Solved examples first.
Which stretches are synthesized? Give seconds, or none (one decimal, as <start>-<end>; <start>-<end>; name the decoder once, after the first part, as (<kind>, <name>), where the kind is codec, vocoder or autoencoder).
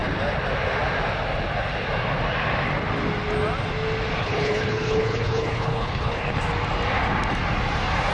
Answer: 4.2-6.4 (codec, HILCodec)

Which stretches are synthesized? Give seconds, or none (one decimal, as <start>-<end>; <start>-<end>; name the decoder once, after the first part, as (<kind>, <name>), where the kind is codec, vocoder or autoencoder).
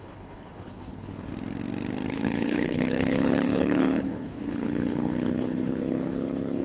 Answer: 0.0-1.3 (codec, HILCodec); 2.1-6.6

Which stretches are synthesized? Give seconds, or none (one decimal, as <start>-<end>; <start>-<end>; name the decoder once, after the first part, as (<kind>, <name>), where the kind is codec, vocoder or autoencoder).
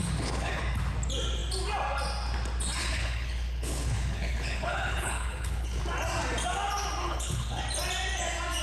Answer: 0.0-0.6 (codec, HILCodec); 2.8-5.8; 7.0-7.6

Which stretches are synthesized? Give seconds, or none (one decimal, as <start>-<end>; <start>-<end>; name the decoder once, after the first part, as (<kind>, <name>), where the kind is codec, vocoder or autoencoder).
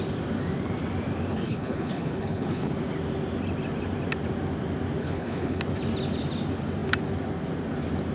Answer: 1.3-2.7 (codec, HILCodec); 5.0-5.6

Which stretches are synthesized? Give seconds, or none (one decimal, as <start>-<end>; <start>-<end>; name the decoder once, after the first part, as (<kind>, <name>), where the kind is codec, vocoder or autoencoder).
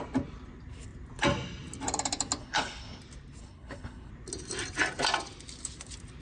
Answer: 2.4-3.0 (codec, HILCodec); 3.4-4.1